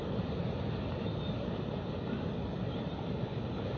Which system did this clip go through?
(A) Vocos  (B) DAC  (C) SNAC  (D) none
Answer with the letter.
D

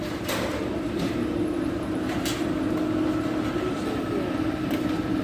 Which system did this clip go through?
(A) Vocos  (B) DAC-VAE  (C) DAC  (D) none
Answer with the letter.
D